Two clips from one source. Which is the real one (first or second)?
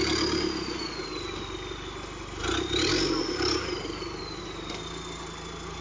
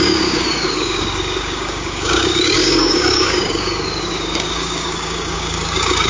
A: first